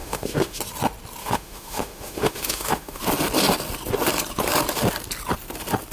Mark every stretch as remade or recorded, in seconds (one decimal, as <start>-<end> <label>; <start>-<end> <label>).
0.0-0.6 remade; 0.6-1.2 recorded; 1.2-3.0 remade; 3.0-5.9 recorded